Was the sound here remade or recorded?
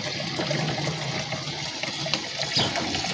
recorded